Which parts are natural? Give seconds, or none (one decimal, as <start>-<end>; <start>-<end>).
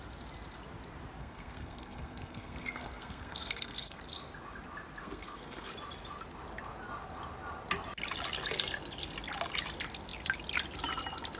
0.0-1.2; 4.0-5.0; 5.7-11.4